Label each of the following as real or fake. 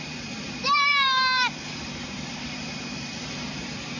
fake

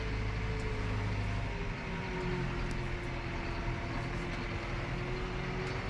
real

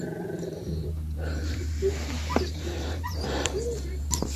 fake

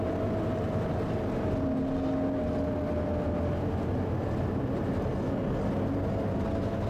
real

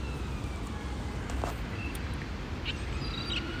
real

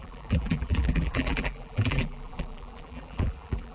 fake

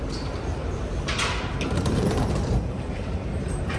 fake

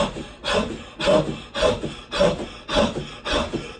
real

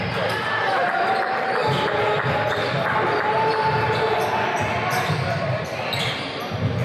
real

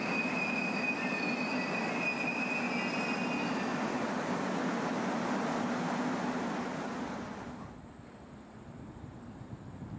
real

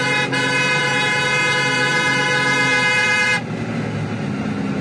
real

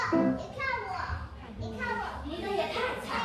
fake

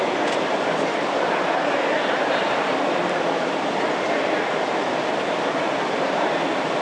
fake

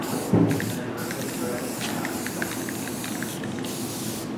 real